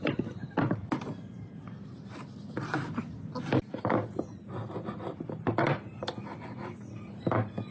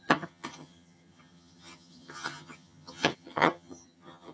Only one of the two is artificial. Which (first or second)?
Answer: second